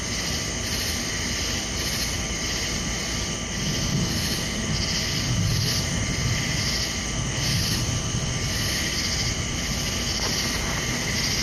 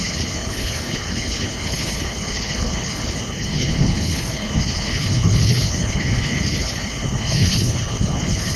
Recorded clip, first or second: first